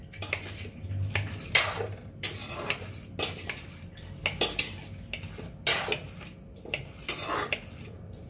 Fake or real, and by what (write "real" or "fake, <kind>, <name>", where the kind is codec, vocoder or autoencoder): real